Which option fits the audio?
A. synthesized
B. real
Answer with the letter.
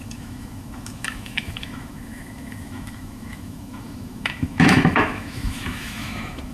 A